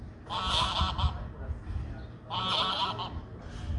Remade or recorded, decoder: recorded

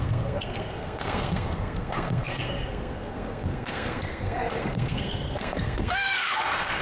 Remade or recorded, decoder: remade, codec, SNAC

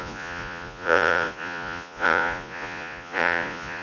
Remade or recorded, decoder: remade, vocoder, Vocos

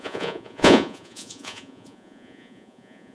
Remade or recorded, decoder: remade, vocoder, Vocos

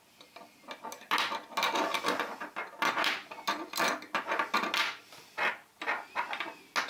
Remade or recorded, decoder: recorded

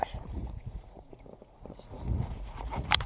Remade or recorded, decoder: remade, vocoder, Vocos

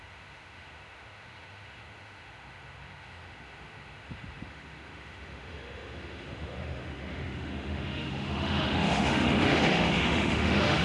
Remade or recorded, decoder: remade, autoencoder, DAC-VAE